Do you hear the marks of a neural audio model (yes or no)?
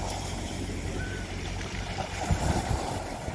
yes